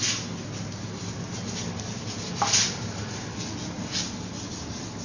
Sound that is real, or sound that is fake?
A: real